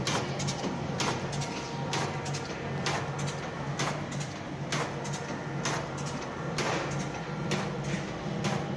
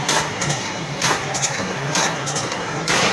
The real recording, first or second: first